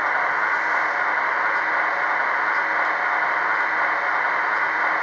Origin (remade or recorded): recorded